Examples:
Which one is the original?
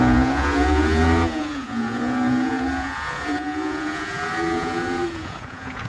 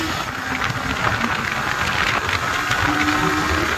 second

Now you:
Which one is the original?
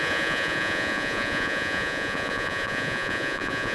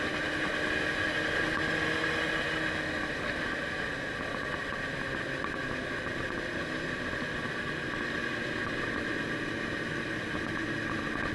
second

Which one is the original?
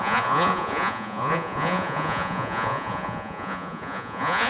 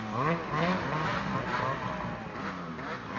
second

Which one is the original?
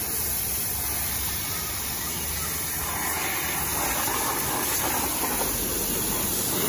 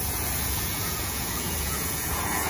first